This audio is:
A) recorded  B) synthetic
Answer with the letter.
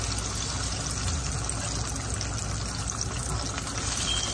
A